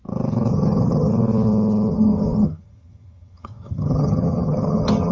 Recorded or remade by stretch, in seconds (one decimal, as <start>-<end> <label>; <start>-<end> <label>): 0.0-0.5 recorded; 0.5-1.1 remade; 1.1-1.9 recorded; 1.9-5.1 remade